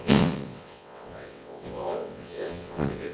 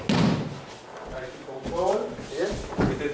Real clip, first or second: second